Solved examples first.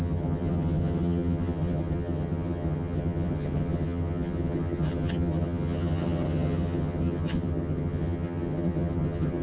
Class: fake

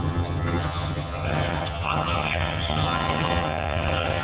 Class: fake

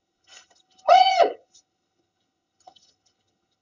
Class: fake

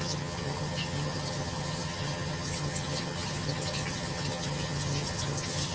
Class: fake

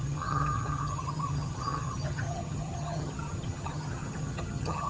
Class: fake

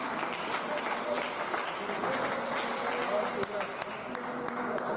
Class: real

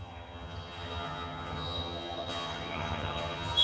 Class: fake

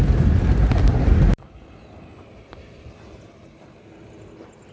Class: real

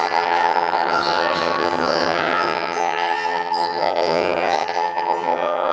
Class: fake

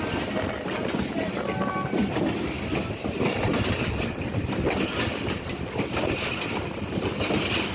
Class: real